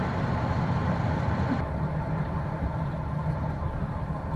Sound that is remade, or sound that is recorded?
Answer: recorded